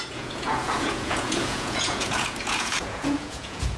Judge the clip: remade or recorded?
remade